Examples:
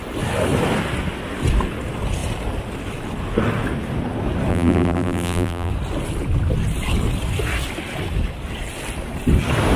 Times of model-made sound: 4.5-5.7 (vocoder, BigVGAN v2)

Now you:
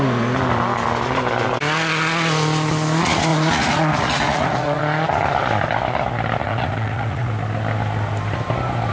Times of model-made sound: 3.3-4.8 (vocoder, Vocos); 6.4-7.3

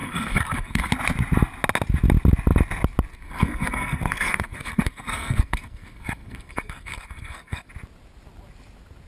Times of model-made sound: 0.0-0.9 (codec, SNAC); 3.1-7.7